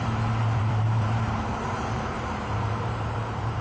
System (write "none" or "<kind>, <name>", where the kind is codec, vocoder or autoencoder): vocoder, BigVGAN v2